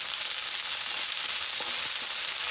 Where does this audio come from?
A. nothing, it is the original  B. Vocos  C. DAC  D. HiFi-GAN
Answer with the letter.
A